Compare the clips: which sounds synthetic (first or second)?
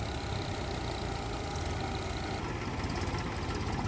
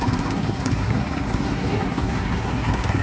second